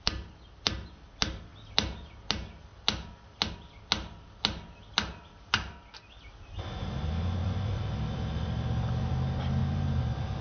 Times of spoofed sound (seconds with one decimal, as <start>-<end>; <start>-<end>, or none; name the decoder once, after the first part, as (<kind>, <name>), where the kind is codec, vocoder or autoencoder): 7.4-9.1 (vocoder, BigVGAN v2)